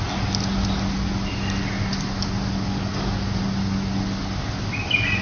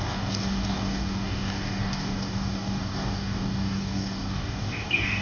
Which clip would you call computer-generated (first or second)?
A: second